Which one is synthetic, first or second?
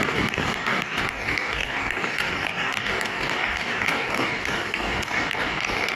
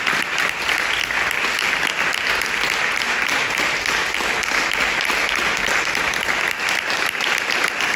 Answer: first